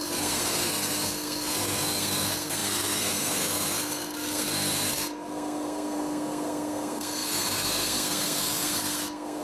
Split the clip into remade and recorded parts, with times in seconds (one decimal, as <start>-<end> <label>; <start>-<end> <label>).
0.0-9.4 remade